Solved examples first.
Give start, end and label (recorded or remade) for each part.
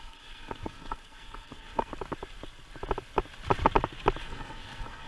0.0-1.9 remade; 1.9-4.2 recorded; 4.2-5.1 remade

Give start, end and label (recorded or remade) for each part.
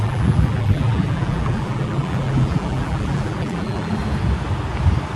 0.0-4.0 remade; 4.0-5.2 recorded